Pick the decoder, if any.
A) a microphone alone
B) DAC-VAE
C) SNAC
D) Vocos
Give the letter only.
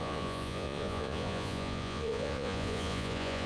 D